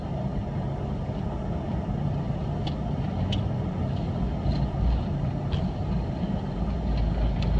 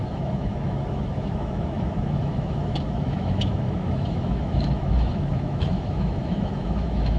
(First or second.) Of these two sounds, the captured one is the first